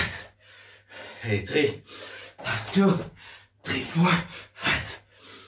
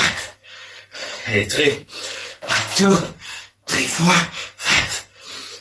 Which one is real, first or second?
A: first